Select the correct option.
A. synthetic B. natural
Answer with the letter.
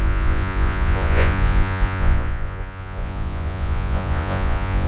A